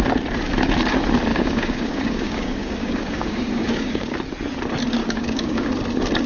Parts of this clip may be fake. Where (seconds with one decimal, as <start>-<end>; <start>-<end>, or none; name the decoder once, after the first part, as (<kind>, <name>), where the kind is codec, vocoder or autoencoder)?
1.3-4.1 (codec, DAC); 5.0-5.7

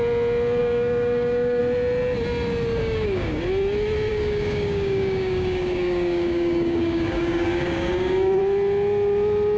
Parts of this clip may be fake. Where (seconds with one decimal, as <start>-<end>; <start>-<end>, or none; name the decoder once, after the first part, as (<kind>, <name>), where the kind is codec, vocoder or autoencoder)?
0.6-1.6 (codec, DAC); 2.8-3.4; 4.1-8.4

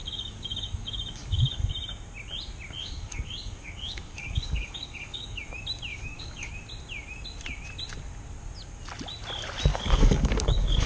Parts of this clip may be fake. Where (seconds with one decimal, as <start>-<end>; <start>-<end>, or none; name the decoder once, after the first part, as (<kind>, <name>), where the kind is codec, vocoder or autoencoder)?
0.0-1.7 (codec, DAC); 2.8-5.4; 5.9-6.5; 9.7-10.9

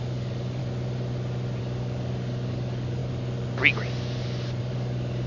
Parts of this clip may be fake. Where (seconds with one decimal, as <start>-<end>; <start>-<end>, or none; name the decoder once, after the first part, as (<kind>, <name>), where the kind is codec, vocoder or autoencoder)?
0.0-0.6 (codec, DAC); 1.6-3.0; 4.6-5.3